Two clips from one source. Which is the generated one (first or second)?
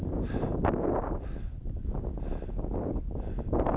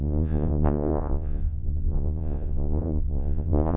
second